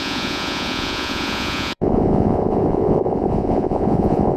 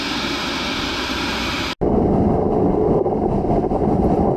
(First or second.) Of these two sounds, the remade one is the first